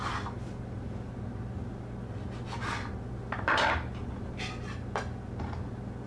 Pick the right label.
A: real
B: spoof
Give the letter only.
A